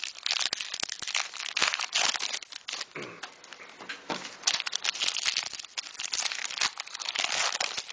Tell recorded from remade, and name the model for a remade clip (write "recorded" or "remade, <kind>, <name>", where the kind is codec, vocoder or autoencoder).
recorded